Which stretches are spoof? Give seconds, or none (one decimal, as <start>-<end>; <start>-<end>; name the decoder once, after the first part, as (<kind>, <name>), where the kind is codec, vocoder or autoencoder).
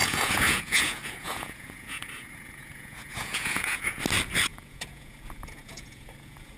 0.0-4.0 (vocoder, Vocos); 4.5-6.6